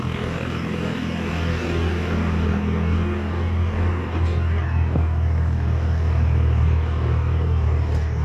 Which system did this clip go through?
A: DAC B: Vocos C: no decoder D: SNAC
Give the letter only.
A